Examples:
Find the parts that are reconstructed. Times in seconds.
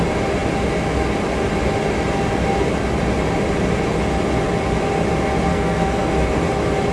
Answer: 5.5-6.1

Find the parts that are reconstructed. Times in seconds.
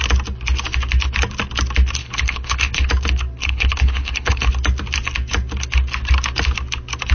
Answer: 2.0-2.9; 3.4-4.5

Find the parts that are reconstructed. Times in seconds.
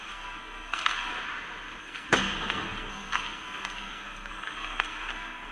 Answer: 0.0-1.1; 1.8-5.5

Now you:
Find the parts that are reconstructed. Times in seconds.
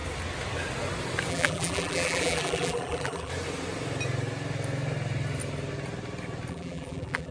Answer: 1.3-3.3; 6.5-7.3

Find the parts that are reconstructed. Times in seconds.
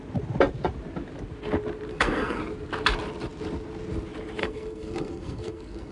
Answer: 1.9-2.4; 4.4-5.9